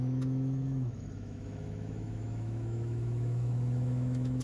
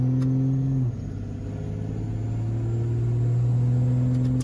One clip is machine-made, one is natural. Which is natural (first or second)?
second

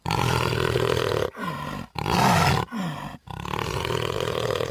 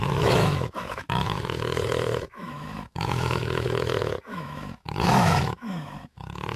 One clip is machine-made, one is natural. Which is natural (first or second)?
first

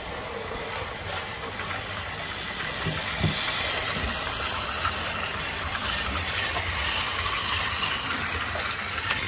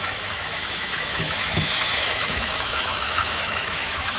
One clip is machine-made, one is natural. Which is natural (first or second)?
first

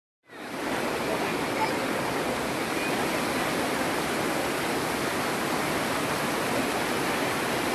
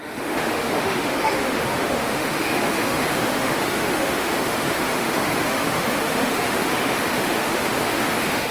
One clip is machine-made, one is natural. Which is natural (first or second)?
first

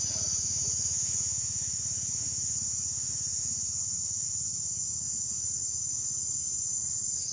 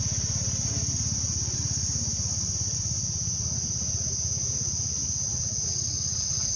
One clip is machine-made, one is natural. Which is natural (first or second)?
second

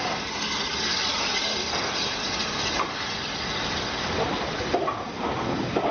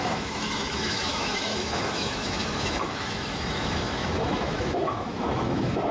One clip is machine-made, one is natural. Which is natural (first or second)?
first